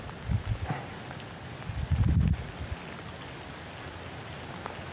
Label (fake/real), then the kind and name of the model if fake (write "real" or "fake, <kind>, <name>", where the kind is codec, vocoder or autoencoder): real